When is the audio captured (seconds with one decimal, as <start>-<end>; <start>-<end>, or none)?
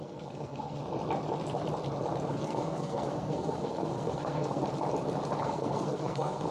0.8-2.3; 4.6-5.4